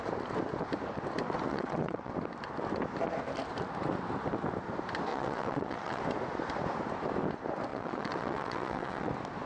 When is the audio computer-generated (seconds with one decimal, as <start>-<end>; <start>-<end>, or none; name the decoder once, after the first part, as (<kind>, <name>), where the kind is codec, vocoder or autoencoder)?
1.5-2.1 (vocoder, WaveNeXt); 5.1-6.0; 7.7-9.1